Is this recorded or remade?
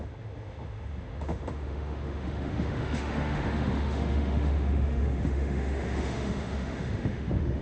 remade